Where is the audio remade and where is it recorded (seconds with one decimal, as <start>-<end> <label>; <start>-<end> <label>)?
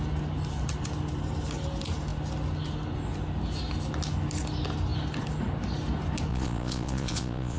0.0-6.3 recorded; 6.3-7.6 remade